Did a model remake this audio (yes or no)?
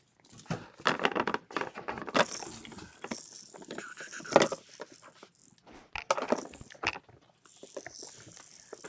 no